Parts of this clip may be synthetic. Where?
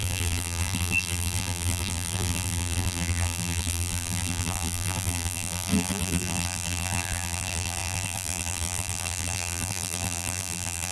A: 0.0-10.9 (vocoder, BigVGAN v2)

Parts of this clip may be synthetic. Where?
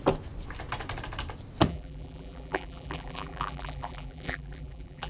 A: 1.7-5.1 (vocoder, BigVGAN v2)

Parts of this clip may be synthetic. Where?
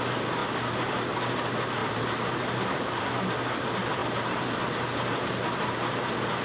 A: 1.8-3.0 (vocoder, BigVGAN v2); 4.0-4.6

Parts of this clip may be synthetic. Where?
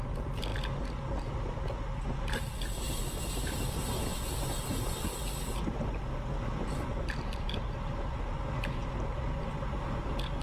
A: none